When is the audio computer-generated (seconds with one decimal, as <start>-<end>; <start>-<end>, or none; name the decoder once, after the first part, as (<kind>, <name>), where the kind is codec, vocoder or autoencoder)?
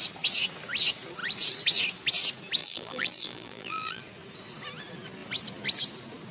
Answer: 2.6-4.0 (vocoder, BigVGAN v2)